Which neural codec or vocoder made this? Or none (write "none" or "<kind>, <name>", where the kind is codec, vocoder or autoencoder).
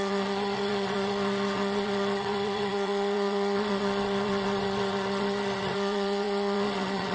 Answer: vocoder, Vocos